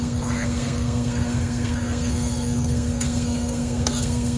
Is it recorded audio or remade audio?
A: remade